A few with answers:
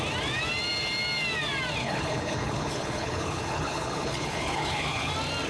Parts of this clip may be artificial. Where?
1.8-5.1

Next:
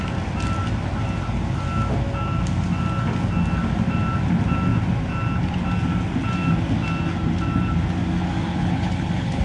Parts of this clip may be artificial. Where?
8.5-9.4

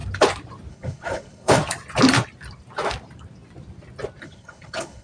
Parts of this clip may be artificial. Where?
0.7-1.6; 4.2-5.0

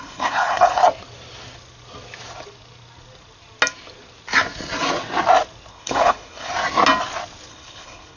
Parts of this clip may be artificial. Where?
0.0-0.8; 5.7-6.5; 7.5-8.2

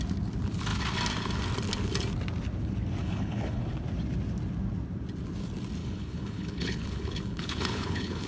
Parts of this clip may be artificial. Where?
3.0-3.6; 5.8-8.3